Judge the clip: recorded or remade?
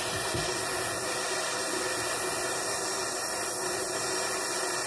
recorded